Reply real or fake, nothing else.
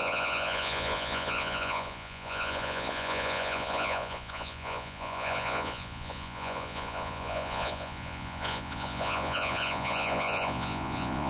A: fake